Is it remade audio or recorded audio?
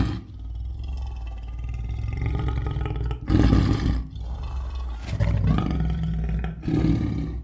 recorded